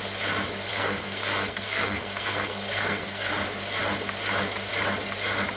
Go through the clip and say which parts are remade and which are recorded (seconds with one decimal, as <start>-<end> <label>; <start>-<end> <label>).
0.0-0.7 recorded; 0.7-3.3 remade; 3.3-5.6 recorded